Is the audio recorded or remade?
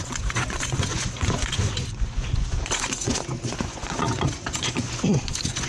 remade